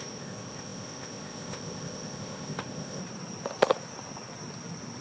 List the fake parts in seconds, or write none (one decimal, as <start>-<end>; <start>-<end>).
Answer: 0.0-3.0